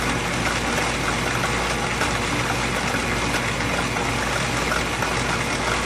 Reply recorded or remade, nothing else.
recorded